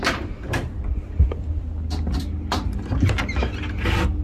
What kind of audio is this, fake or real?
real